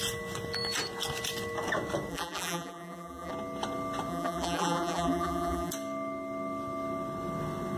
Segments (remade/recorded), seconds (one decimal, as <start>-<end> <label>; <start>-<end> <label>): 0.0-2.1 recorded; 2.1-3.3 remade; 3.3-4.1 recorded; 4.1-5.7 remade; 5.7-7.8 recorded